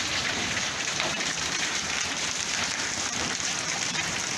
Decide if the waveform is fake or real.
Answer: fake